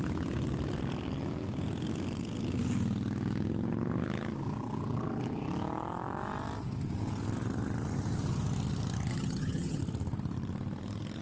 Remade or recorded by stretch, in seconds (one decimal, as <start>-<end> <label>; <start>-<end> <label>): 0.0-9.1 recorded; 9.1-9.8 remade; 9.8-11.2 recorded